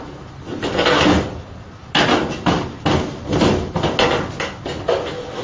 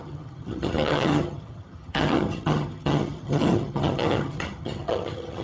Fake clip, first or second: second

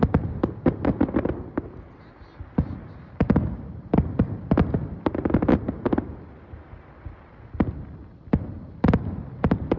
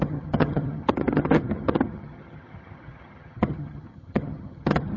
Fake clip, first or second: second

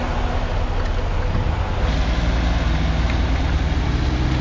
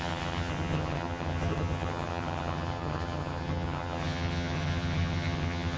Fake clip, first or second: second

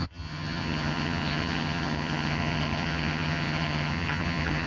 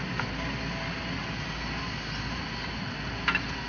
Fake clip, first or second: first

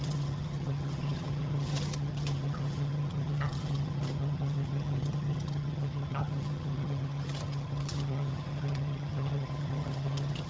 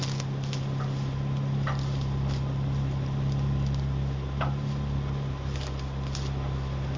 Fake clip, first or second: first